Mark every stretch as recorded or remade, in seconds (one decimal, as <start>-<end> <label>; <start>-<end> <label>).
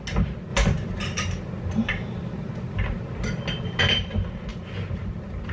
0.0-4.5 recorded; 4.5-5.5 remade